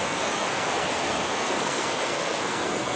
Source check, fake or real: fake